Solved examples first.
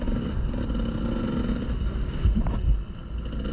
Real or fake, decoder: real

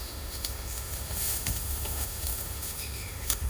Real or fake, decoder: fake, autoencoder, DAC-VAE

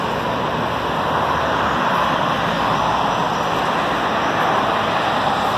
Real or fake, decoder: real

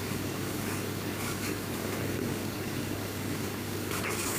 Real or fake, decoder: fake, codec, DAC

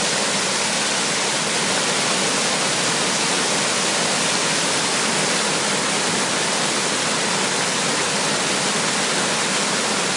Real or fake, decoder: real